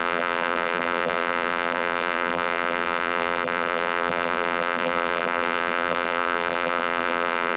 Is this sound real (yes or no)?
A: no